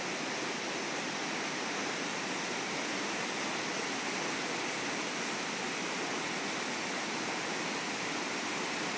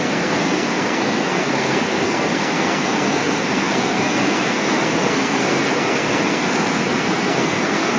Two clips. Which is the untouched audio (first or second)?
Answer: first